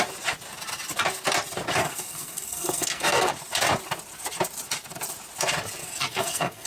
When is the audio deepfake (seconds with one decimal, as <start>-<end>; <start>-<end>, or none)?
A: 1.8-3.3; 5.8-6.7